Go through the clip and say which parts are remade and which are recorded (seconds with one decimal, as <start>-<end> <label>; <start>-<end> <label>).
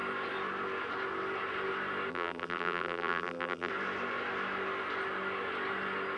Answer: 0.0-2.1 recorded; 2.1-3.7 remade; 3.7-6.2 recorded